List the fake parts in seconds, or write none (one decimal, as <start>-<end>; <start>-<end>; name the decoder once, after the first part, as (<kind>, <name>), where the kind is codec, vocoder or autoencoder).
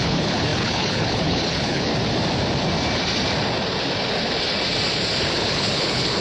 0.0-1.9 (codec, HILCodec); 5.3-6.2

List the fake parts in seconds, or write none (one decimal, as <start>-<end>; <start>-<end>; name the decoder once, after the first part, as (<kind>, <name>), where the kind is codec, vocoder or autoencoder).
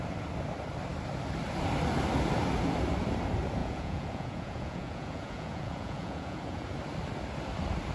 3.6-6.7 (vocoder, Vocos)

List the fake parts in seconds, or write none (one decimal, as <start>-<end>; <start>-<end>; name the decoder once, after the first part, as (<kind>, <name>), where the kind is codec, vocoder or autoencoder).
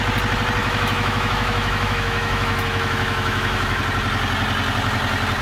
0.6-3.8 (autoencoder, DAC-VAE)